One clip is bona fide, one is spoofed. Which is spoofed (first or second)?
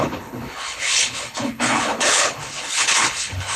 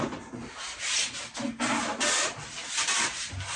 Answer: first